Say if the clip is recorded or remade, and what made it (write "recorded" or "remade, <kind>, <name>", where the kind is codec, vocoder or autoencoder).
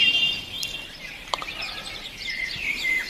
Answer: remade, vocoder, BigVGAN v2